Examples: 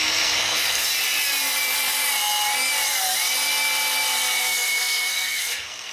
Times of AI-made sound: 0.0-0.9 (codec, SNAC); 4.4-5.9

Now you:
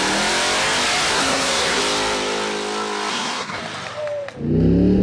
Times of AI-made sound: 1.1-1.8 (codec, SNAC); 3.1-3.6

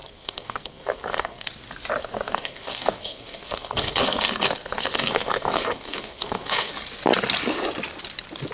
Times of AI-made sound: 0.0-1.5 (codec, SNAC); 2.0-6.7

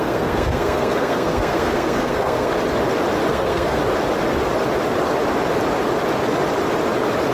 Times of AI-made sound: 0.0-2.5 (codec, SNAC); 3.3-3.8

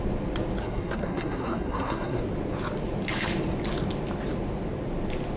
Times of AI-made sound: 0.6-2.2 (codec, SNAC)